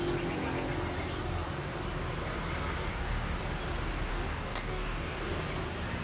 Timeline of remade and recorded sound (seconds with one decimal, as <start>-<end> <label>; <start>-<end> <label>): 0.0-2.9 recorded; 2.9-3.4 remade; 3.4-4.1 recorded; 4.1-5.4 remade; 5.4-6.0 recorded